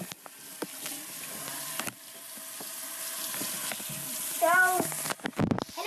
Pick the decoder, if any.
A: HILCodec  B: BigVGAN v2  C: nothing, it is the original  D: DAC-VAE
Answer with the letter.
C